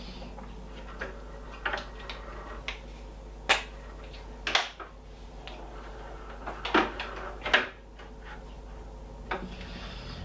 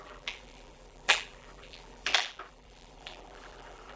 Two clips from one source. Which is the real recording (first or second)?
first